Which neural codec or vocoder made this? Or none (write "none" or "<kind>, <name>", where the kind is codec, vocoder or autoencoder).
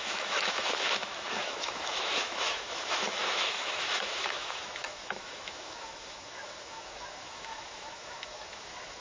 autoencoder, DAC-VAE